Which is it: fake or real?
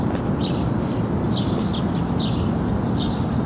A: real